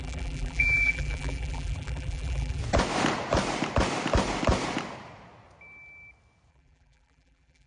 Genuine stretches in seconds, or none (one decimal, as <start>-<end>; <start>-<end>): 2.6-6.5